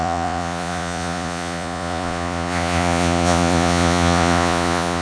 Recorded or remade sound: remade